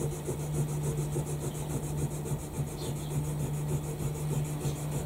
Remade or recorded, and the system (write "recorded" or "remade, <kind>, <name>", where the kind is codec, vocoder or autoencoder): recorded